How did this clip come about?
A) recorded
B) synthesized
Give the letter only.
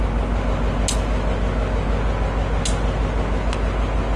A